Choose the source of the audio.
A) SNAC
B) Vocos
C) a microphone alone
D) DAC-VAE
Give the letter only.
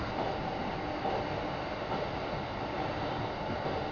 C